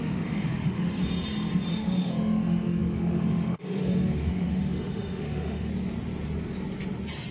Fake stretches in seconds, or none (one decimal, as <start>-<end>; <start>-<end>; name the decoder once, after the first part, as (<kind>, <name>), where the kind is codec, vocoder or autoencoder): 0.0-1.0 (autoencoder, DAC-VAE); 1.7-5.7